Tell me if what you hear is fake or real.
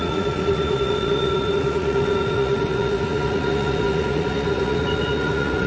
fake